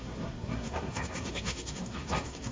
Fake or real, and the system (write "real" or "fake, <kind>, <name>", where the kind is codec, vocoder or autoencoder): fake, codec, SNAC